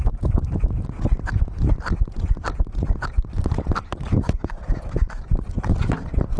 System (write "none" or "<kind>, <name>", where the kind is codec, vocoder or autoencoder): none